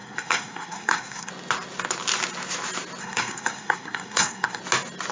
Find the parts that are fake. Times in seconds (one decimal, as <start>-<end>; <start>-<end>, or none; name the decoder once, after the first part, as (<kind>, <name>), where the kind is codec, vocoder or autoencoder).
0.0-1.3 (codec, SNAC); 3.0-4.6